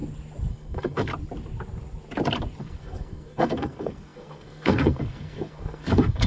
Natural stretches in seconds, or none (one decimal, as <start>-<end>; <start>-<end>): 0.0-0.5; 1.1-2.6